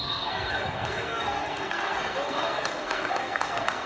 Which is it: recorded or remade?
remade